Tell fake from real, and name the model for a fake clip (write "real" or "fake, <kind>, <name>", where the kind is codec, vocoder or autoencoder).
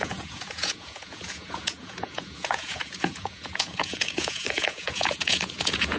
fake, vocoder, Vocos